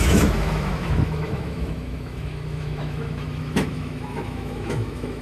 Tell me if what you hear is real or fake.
fake